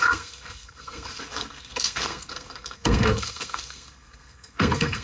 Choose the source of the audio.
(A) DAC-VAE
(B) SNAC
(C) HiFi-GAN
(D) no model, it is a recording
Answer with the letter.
B